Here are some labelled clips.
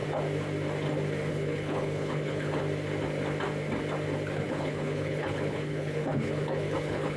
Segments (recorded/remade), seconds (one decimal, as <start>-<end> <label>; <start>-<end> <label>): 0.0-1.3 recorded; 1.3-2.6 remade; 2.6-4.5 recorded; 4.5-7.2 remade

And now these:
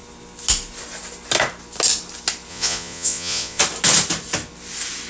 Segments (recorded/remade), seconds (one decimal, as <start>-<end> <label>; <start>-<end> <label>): 0.0-2.5 recorded; 2.5-3.6 remade; 3.6-5.1 recorded

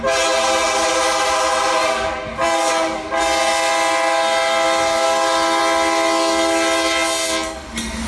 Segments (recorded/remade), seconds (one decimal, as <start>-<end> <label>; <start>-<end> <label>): 0.0-1.8 recorded; 1.8-3.2 remade; 3.2-8.1 recorded

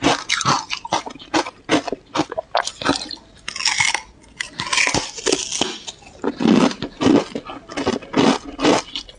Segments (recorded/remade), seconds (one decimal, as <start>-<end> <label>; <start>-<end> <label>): 0.0-9.2 recorded

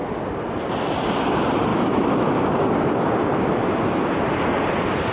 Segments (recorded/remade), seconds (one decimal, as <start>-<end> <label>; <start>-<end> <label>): 0.0-5.1 recorded

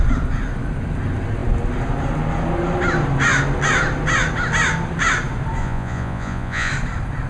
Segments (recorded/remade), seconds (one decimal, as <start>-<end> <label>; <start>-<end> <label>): 0.0-5.6 recorded; 5.6-6.7 remade; 6.7-7.3 recorded

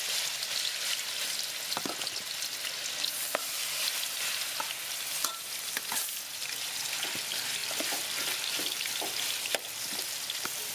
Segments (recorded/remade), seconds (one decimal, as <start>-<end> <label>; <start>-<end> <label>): 0.0-10.7 recorded

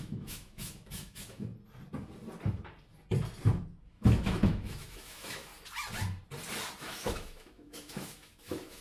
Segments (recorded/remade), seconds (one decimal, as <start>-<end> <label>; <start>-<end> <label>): 0.0-1.5 remade; 1.5-3.9 recorded; 3.9-5.5 remade; 5.5-6.8 recorded; 6.8-8.8 remade